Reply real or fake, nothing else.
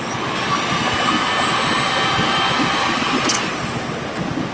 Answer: real